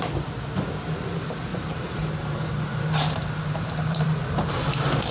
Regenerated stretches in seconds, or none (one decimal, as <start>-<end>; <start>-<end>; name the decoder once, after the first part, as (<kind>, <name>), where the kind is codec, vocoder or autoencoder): 1.5-4.6 (vocoder, BigVGAN v2)

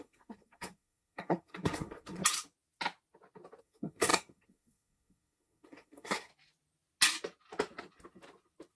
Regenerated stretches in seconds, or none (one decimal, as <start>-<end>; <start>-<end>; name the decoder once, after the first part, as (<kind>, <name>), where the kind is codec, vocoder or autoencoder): 0.0-2.2 (codec, SNAC); 3.6-6.3

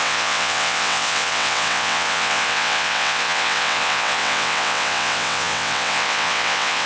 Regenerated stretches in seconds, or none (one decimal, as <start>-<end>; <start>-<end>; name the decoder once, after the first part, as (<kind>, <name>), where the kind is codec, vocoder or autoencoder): 0.0-6.9 (vocoder, WaveNeXt)

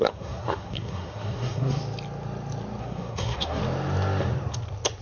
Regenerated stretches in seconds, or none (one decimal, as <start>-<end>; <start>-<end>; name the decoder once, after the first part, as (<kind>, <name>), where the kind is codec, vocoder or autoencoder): 0.0-1.8 (codec, SNAC); 2.8-3.6

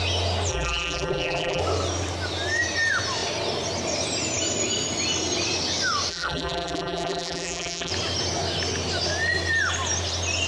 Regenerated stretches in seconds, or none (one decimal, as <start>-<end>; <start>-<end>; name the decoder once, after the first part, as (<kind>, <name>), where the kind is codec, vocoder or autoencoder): 0.5-1.6 (vocoder, BigVGAN v2); 6.1-7.9

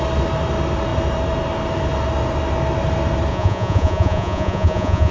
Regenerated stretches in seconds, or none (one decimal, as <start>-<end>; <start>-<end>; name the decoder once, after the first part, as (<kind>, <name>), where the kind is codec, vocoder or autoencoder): 3.3-5.1 (vocoder, Vocos)

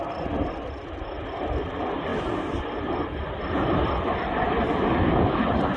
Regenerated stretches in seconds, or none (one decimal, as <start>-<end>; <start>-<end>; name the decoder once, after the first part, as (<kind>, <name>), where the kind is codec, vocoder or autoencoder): none

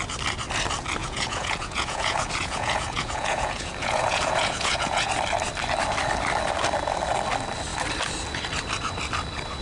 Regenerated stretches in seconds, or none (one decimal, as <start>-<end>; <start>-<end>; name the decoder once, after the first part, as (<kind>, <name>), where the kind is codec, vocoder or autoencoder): 1.0-5.1 (vocoder, Vocos)